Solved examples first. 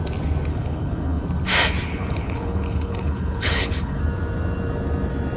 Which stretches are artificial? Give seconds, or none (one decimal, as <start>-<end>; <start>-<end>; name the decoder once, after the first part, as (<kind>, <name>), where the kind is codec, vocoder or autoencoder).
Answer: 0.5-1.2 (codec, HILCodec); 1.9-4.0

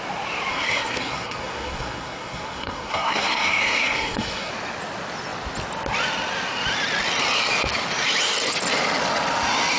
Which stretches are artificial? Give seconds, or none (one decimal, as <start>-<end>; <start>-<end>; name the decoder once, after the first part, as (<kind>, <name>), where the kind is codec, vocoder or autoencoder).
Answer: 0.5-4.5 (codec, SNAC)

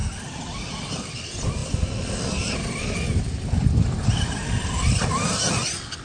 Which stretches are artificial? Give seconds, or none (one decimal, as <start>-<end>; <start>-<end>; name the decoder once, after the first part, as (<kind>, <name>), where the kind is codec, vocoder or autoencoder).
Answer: none